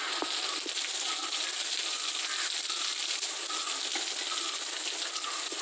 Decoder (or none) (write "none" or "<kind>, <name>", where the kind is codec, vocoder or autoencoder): none